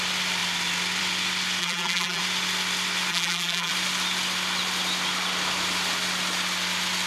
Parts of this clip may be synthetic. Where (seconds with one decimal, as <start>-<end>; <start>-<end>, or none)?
1.6-2.2; 3.1-3.7